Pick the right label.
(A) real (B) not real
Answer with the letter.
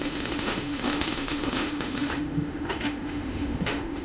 B